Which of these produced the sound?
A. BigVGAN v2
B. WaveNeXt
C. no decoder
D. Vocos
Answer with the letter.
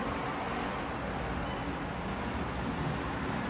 C